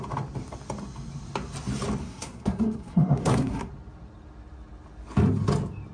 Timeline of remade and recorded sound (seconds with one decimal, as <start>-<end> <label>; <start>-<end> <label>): 0.0-2.0 recorded; 2.0-3.7 remade; 3.7-5.9 recorded